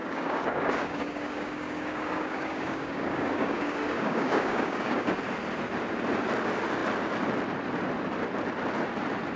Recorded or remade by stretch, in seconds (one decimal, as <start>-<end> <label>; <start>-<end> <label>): 0.0-5.1 remade; 5.1-9.4 recorded